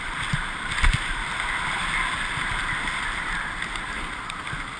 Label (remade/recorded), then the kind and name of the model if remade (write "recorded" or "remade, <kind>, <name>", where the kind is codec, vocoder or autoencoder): recorded